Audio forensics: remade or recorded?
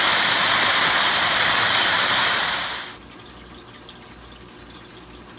recorded